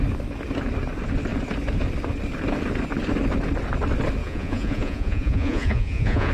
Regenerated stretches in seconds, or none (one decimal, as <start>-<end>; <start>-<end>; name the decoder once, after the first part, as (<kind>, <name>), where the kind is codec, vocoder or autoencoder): 4.2-6.3 (vocoder, Vocos)